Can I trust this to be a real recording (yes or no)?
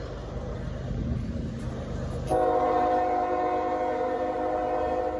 yes